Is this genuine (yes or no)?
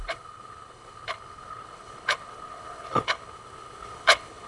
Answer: no